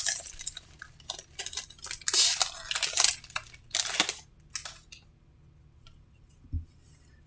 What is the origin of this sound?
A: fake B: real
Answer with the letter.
B